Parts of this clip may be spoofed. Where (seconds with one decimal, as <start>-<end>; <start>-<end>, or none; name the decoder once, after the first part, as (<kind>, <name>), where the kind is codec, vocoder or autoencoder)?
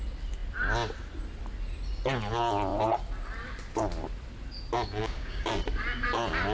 5.0-5.5 (codec, DAC)